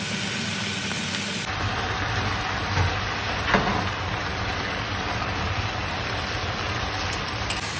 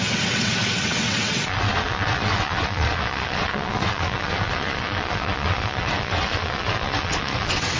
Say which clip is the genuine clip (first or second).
first